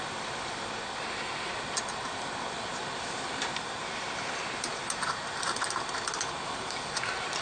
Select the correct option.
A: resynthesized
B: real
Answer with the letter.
B